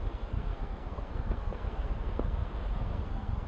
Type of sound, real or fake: fake